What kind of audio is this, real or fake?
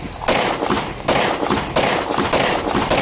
real